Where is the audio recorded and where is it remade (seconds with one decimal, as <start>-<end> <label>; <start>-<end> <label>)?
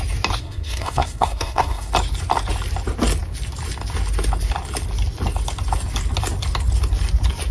0.0-0.4 recorded; 0.4-1.9 remade; 1.9-7.5 recorded